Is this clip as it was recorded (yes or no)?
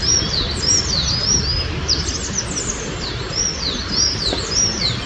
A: yes